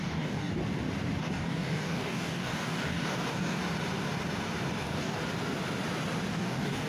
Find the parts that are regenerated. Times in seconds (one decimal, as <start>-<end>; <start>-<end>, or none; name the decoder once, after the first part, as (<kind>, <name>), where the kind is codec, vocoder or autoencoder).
0.0-0.6 (codec, DAC); 1.2-3.6; 4.8-5.2; 6.3-6.9